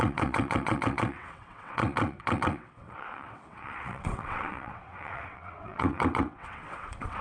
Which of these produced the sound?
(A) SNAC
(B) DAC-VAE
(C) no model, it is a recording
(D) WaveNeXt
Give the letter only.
D